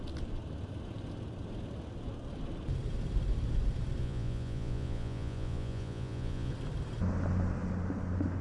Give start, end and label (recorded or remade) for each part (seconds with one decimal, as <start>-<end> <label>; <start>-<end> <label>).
0.0-4.0 recorded; 4.0-6.5 remade; 6.5-8.4 recorded